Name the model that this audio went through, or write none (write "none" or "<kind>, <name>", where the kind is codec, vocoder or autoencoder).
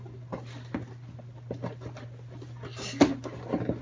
none